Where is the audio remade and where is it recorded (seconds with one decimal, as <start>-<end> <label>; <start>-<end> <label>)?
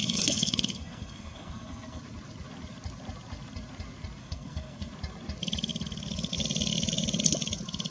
0.0-2.0 remade; 2.0-4.2 recorded; 4.2-4.9 remade; 4.9-7.9 recorded